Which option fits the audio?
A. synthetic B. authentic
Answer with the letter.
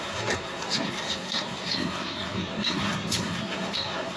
A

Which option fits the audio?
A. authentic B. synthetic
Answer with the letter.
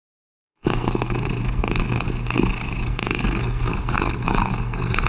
B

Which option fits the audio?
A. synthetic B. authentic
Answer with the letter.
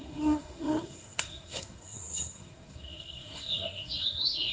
A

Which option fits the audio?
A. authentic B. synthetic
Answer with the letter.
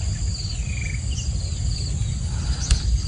A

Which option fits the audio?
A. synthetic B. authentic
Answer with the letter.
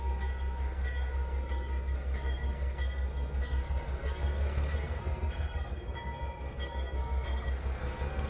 A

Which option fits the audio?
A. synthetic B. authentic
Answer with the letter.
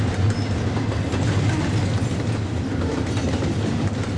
B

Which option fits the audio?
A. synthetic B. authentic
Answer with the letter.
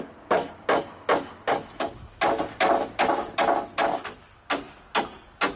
B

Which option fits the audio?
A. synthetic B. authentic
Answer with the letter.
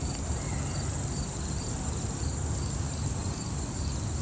B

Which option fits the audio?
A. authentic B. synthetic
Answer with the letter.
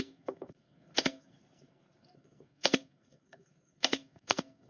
B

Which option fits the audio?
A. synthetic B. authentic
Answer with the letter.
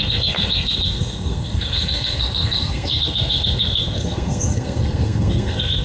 A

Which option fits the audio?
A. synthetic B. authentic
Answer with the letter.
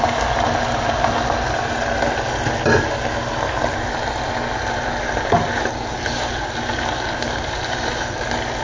B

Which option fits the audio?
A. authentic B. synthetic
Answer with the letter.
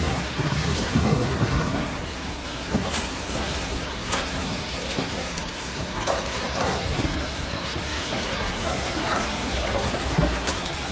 B